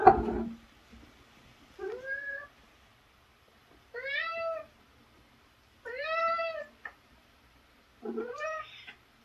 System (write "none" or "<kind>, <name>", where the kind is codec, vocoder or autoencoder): none